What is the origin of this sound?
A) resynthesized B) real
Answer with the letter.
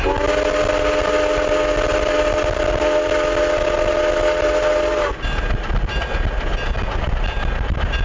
B